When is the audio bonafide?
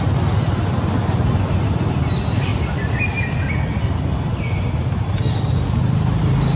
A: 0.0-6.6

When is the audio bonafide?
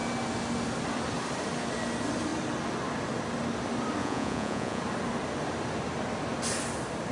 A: 0.0-4.0; 4.8-7.1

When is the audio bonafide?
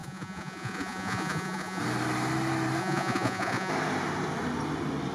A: 1.8-2.8; 3.7-5.1